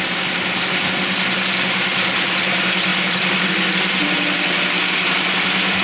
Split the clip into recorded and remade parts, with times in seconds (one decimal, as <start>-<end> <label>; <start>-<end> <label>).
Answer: 0.0-5.8 recorded